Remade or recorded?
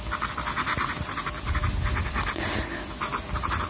recorded